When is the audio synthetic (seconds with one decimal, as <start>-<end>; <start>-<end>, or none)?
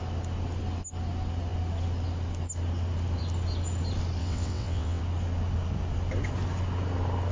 4.2-5.0